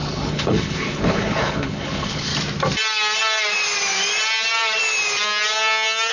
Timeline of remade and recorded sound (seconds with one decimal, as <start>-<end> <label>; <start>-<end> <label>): 0.0-2.3 remade; 2.3-6.1 recorded